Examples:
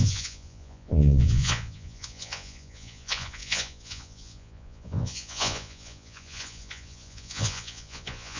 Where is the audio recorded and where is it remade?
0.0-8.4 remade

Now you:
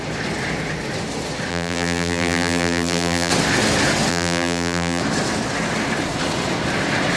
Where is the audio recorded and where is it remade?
0.0-1.5 recorded; 1.5-3.3 remade; 3.3-4.1 recorded; 4.1-5.0 remade; 5.0-7.2 recorded

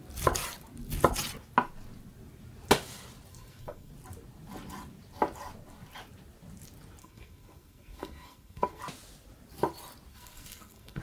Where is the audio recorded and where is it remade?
0.0-3.3 recorded; 3.3-3.9 remade; 3.9-7.0 recorded; 7.0-8.8 remade; 8.8-10.1 recorded; 10.1-11.0 remade